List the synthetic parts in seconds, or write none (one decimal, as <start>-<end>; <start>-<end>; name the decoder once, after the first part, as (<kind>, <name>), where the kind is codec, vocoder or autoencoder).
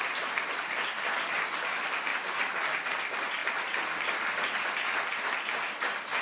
none